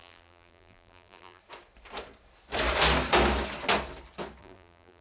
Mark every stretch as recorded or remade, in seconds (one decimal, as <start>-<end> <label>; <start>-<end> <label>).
0.0-1.4 remade; 1.4-4.4 recorded; 4.4-5.0 remade